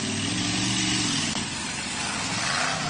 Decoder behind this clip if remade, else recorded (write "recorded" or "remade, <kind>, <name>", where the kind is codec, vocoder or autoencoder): recorded